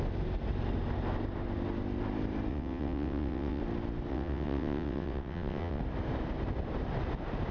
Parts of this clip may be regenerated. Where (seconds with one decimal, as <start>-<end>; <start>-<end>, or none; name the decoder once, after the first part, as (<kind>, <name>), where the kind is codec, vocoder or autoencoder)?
2.5-3.6 (vocoder, WaveNeXt); 4.1-5.8